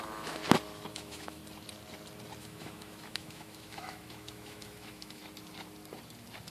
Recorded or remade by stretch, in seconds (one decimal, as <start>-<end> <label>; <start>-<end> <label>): 0.0-0.4 remade; 0.4-0.9 recorded; 0.9-1.4 remade; 1.4-2.4 recorded; 2.4-5.2 remade; 5.2-6.5 recorded